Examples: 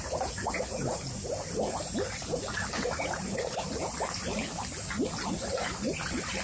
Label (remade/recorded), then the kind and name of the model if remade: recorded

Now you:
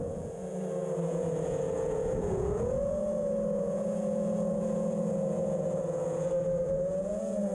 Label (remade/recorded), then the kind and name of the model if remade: remade, vocoder, Vocos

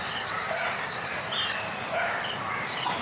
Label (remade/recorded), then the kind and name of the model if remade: recorded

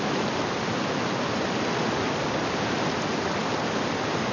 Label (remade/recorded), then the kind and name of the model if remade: recorded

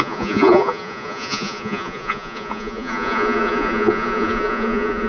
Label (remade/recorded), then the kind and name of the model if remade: remade, vocoder, Vocos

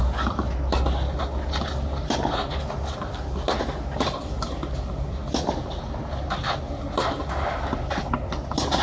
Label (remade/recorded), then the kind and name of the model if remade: recorded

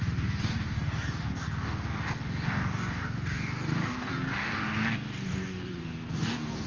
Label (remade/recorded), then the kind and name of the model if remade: remade, codec, DAC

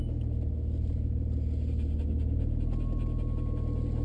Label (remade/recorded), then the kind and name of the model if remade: recorded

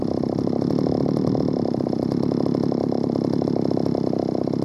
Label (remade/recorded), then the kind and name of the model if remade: recorded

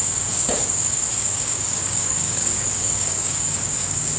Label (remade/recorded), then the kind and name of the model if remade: remade, codec, DAC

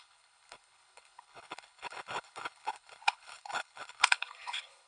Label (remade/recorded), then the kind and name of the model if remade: remade, codec, HILCodec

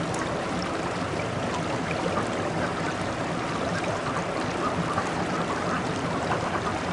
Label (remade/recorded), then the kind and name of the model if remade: remade, vocoder, BigVGAN v2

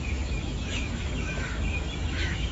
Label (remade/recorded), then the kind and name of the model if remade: remade, autoencoder, DAC-VAE